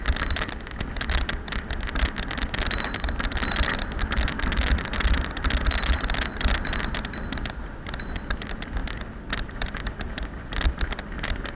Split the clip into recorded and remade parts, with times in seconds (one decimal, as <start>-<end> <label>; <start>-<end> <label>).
0.0-11.5 recorded